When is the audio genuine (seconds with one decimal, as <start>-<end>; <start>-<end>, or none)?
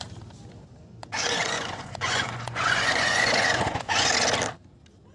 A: 0.0-1.0; 4.1-5.1